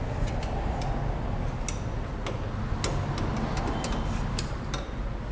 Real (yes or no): yes